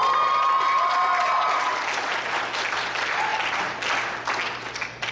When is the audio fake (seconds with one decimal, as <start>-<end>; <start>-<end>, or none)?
none